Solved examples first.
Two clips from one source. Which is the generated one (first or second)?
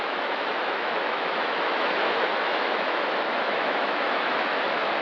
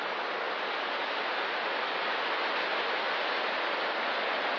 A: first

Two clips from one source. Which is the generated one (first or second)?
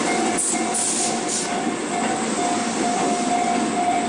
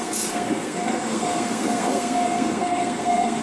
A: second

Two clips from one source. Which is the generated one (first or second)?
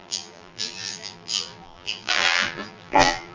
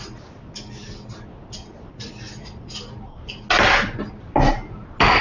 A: first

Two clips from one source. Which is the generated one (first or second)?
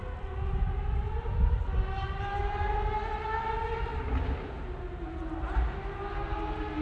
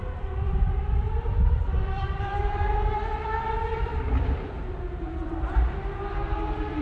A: second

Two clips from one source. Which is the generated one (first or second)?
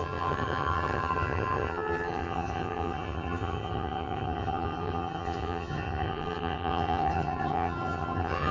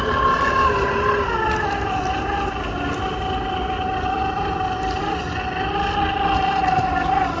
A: first